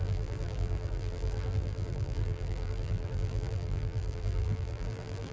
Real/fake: fake